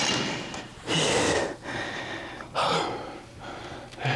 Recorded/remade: recorded